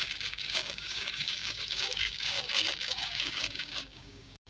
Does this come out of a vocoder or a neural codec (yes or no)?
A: yes